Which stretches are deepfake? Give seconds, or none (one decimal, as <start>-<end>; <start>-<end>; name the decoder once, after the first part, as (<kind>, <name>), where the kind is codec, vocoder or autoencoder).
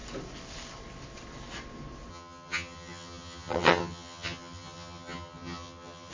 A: 2.1-6.1 (vocoder, HiFi-GAN)